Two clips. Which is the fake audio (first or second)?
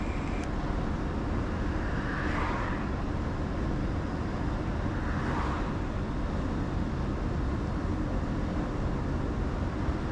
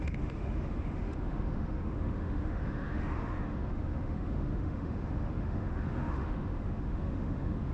second